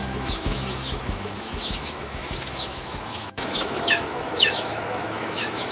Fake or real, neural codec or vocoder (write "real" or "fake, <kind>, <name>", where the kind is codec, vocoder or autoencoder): fake, autoencoder, DAC-VAE